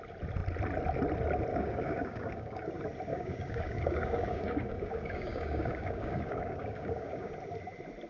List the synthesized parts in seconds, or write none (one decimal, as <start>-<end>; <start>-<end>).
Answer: 1.5-2.7; 3.1-7.3